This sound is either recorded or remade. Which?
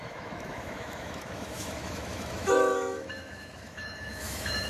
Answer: remade